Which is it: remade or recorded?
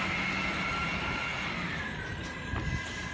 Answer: recorded